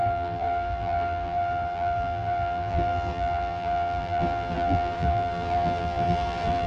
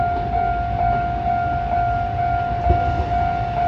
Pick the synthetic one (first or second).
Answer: first